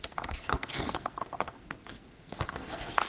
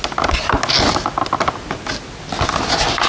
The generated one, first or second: first